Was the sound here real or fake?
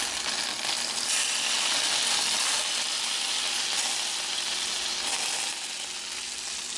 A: real